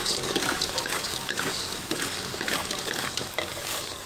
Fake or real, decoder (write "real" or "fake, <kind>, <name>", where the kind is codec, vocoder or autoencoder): fake, codec, DAC